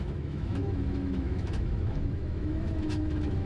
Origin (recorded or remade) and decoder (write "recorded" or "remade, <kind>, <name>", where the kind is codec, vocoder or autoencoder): remade, autoencoder, DAC-VAE